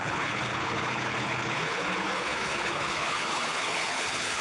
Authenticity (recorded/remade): remade